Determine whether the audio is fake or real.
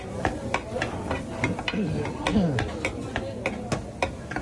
real